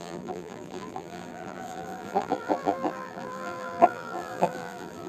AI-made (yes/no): yes